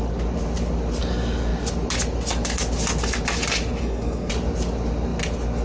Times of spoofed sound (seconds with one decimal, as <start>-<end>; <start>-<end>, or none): 3.8-4.3